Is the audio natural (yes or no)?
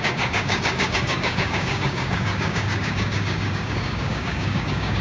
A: no